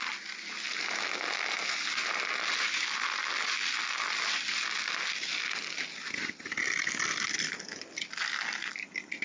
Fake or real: real